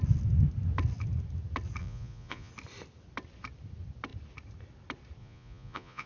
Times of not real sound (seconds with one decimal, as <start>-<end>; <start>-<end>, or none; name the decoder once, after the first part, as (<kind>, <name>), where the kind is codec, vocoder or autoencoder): 1.8-2.5 (vocoder, Vocos); 5.2-6.1

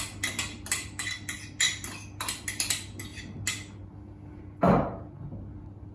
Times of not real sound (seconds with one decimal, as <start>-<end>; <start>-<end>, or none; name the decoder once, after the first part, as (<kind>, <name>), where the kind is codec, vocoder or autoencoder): none

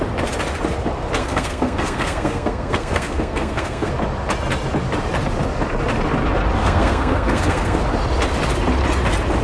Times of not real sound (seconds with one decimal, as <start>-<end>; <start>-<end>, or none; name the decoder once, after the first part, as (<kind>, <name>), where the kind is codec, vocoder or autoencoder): 1.2-3.9 (codec, SNAC); 6.6-7.8